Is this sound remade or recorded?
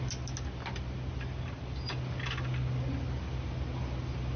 recorded